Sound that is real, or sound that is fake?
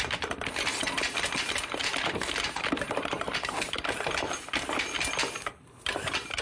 real